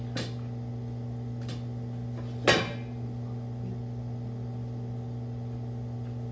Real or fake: real